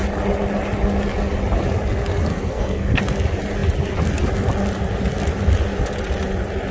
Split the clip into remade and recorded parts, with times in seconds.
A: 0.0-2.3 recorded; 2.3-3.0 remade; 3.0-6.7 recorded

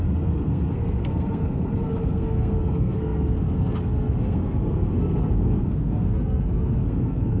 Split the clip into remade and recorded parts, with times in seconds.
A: 0.0-7.4 remade

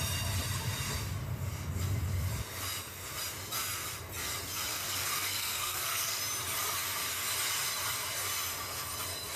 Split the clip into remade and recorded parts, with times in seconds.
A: 0.0-4.7 recorded; 4.7-6.2 remade; 6.2-9.4 recorded

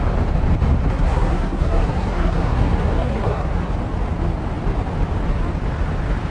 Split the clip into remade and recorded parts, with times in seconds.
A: 0.0-0.8 recorded; 0.8-3.7 remade; 3.7-6.3 recorded

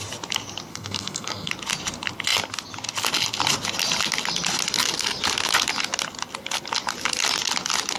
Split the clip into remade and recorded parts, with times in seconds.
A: 0.0-0.7 recorded; 0.7-1.5 remade; 1.5-8.0 recorded

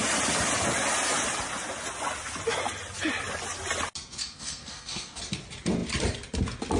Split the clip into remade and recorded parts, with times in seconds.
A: 0.0-4.2 recorded; 4.2-5.2 remade; 5.2-6.8 recorded

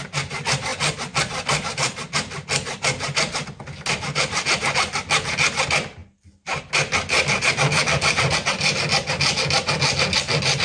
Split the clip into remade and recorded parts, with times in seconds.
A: 0.0-10.6 recorded

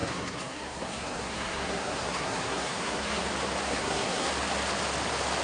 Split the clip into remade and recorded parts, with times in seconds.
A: 0.0-3.2 remade; 3.2-3.7 recorded; 3.7-4.3 remade; 4.3-5.4 recorded